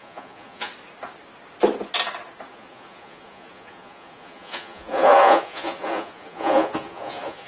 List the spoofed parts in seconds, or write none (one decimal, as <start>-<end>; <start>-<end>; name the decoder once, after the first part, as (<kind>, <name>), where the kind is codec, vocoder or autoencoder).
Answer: 0.0-0.7 (vocoder, Vocos); 2.5-7.5